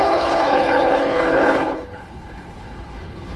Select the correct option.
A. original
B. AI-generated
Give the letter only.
B